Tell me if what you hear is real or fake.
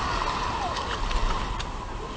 real